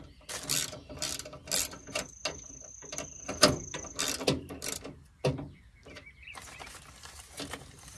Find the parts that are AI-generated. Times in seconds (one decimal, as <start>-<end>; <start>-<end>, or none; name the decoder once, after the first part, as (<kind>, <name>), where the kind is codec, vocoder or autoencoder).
none